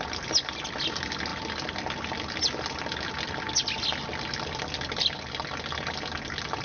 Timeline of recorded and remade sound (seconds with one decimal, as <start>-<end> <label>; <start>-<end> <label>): 0.0-6.6 recorded